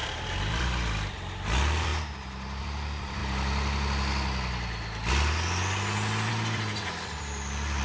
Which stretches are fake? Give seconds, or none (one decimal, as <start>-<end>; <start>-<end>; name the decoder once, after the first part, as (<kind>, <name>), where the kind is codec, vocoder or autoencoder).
0.5-1.9 (vocoder, BigVGAN v2); 2.6-3.2; 6.3-7.8